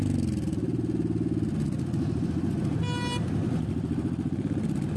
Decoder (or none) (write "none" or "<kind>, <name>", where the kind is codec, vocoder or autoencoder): none